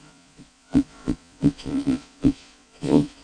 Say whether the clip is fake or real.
fake